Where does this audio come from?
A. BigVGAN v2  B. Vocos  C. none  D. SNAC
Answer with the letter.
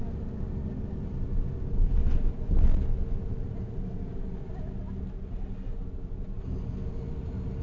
C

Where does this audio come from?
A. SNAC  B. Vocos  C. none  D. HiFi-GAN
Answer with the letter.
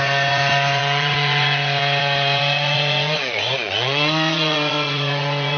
B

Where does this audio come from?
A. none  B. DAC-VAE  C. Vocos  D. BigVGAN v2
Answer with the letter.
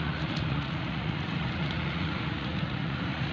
C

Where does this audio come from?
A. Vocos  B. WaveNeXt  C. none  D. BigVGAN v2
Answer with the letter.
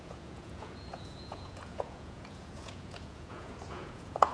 A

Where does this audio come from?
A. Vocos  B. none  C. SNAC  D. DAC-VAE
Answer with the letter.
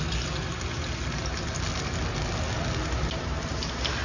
B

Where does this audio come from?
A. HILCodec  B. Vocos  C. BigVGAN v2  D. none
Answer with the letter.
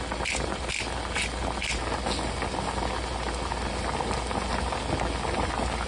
D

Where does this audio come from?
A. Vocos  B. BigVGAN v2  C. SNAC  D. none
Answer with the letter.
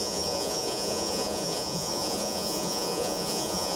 A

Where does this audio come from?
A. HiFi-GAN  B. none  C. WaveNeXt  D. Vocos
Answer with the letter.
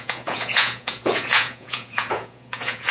D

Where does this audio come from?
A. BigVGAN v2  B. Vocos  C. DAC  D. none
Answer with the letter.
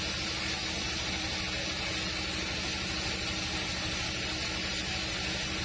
D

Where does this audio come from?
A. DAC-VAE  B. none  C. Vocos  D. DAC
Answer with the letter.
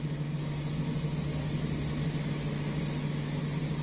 B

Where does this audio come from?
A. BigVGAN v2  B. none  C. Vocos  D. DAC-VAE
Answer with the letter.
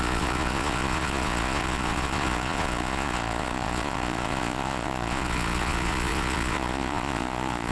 C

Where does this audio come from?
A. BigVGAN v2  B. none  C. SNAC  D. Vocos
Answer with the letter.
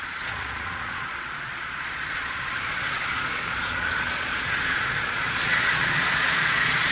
D